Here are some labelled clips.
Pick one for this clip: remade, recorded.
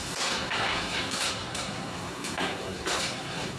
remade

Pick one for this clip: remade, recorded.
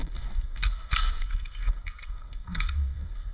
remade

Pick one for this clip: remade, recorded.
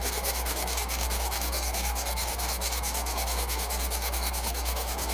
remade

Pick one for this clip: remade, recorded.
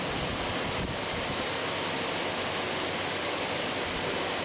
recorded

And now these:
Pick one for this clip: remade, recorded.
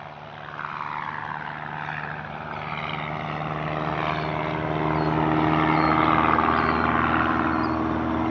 recorded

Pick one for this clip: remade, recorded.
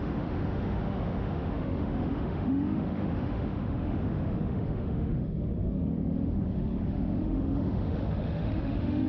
remade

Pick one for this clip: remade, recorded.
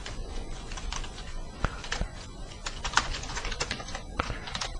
remade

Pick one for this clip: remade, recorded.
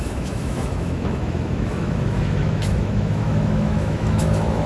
remade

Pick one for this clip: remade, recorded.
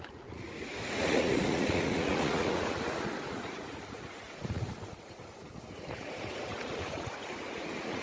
remade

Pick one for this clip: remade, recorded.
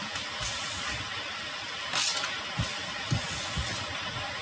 recorded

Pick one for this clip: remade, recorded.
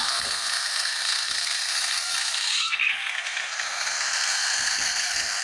remade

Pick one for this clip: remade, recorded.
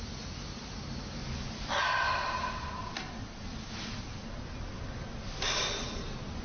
recorded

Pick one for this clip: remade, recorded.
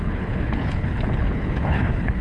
remade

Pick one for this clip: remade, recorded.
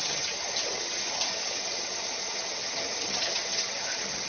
remade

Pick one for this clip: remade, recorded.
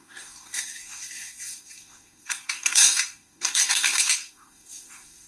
remade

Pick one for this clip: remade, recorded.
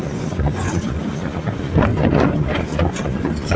remade